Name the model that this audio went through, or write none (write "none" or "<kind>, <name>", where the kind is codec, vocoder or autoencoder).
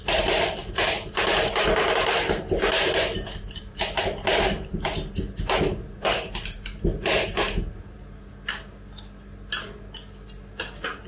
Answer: none